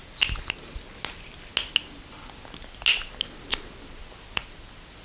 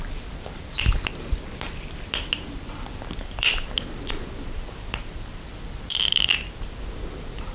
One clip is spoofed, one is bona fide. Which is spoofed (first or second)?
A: second